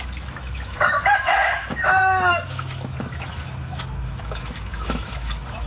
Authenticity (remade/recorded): remade